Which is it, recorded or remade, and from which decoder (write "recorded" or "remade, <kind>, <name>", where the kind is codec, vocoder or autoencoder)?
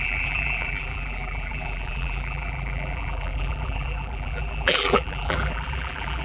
remade, vocoder, BigVGAN v2